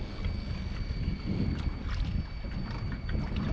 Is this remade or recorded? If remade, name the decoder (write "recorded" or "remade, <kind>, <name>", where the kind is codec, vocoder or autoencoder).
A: recorded